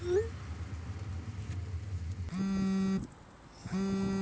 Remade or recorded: recorded